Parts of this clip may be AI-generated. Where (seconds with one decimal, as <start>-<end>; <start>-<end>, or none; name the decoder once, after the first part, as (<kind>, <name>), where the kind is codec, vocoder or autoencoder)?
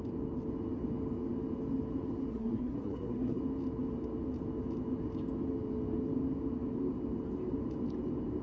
2.3-3.4 (codec, SNAC)